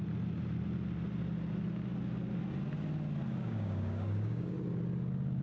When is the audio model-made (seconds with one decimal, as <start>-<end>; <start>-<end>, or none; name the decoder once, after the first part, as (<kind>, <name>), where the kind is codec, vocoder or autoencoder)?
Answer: 3.4-4.5 (codec, DAC)